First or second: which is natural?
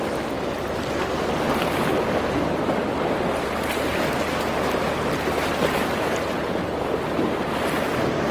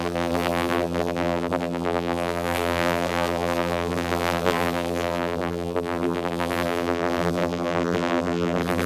first